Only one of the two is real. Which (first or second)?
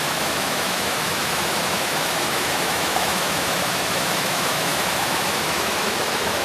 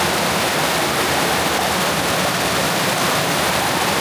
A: second